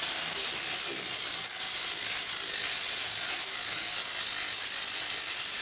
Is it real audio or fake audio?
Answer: real